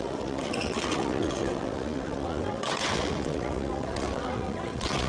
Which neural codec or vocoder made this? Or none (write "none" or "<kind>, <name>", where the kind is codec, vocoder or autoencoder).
vocoder, WaveNeXt